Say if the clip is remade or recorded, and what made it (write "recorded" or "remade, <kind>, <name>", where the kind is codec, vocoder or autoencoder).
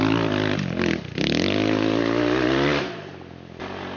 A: recorded